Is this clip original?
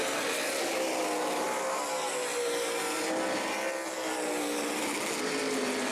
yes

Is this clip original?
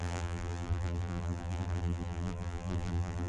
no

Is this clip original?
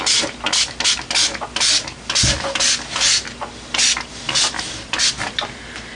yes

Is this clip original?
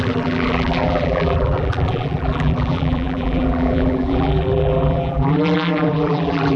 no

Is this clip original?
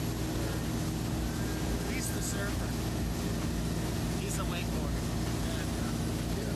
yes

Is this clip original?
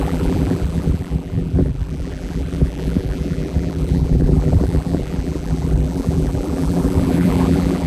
no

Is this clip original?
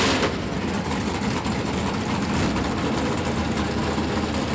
yes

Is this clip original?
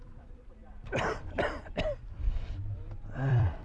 no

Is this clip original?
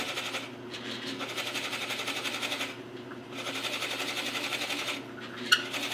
yes